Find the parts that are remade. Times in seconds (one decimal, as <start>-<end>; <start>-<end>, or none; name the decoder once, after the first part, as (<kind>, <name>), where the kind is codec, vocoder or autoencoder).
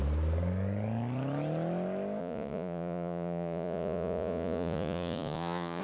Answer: 2.2-5.8 (vocoder, Vocos)